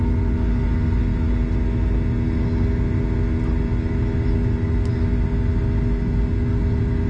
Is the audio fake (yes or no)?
no